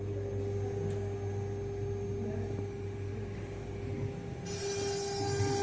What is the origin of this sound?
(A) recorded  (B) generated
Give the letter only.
A